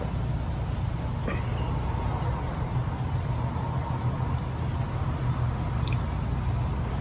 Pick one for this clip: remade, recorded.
recorded